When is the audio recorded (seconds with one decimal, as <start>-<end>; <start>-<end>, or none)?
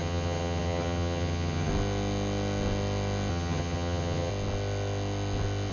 1.7-3.3; 4.3-5.7